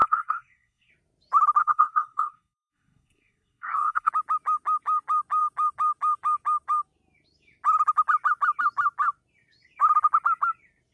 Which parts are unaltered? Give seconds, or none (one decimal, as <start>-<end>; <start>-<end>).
0.9-1.6; 4.1-10.9